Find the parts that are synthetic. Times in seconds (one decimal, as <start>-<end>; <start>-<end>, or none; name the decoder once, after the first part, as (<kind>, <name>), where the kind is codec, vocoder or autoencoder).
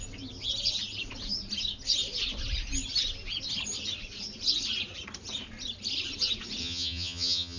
6.6-7.6 (vocoder, HiFi-GAN)